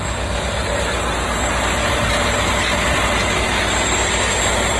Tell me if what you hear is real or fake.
real